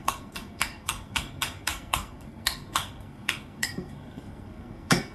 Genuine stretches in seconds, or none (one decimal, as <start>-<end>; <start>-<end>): none